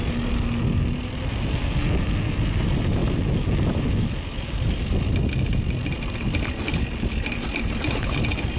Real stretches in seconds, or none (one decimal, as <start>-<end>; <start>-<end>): 0.0-8.6